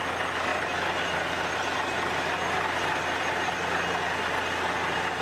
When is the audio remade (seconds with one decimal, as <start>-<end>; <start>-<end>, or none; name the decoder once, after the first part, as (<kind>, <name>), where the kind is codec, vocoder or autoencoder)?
none

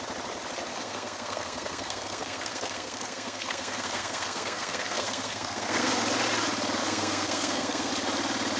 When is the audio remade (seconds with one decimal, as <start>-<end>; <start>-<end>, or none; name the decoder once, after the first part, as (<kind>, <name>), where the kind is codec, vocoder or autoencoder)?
0.7-5.9 (codec, SNAC); 6.8-7.9

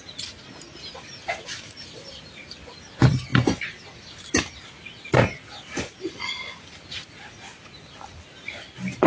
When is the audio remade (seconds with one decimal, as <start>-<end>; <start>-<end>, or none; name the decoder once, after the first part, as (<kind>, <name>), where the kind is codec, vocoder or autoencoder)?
none

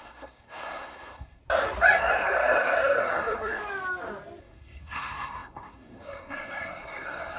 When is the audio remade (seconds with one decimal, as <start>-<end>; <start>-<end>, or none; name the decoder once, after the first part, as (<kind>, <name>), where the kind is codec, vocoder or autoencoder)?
0.0-1.4 (codec, SNAC); 2.1-3.6; 4.4-7.4

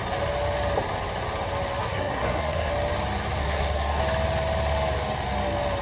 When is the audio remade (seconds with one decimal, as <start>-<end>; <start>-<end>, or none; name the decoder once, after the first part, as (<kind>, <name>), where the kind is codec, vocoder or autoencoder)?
1.8-2.7 (codec, SNAC); 3.4-4.0

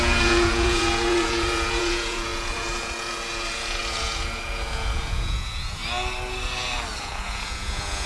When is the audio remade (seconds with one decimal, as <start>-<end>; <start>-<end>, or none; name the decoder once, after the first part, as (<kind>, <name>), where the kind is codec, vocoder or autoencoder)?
0.0-5.8 (vocoder, Vocos); 7.0-8.1

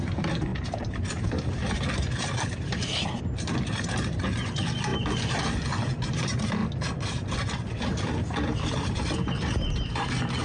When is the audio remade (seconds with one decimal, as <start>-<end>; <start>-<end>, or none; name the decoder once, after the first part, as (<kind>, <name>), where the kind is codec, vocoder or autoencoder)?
0.0-6.6 (vocoder, BigVGAN v2); 7.9-10.4